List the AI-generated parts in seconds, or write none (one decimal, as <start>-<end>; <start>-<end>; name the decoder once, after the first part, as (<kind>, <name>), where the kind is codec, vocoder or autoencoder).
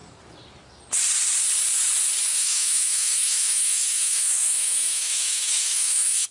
2.3-6.3 (autoencoder, DAC-VAE)